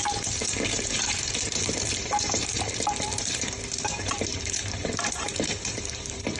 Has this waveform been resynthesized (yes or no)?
yes